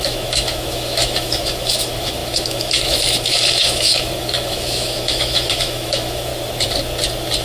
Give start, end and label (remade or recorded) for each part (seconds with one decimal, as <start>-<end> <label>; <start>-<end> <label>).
0.0-6.3 remade; 6.3-7.4 recorded